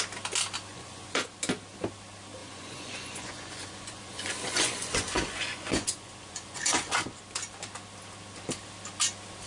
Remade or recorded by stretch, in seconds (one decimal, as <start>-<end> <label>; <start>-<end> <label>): 0.0-0.7 recorded; 0.7-1.3 remade; 1.3-2.4 recorded; 2.4-7.2 remade; 7.2-9.5 recorded